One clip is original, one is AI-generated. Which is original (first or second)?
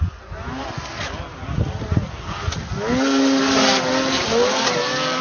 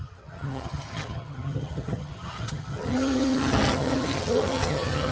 first